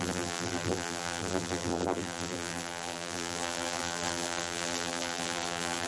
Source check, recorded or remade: remade